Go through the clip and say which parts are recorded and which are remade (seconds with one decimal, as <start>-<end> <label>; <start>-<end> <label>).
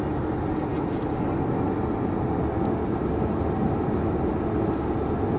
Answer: 0.0-5.4 recorded